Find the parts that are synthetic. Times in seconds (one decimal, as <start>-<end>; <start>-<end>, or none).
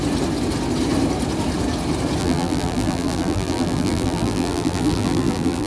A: 2.2-5.7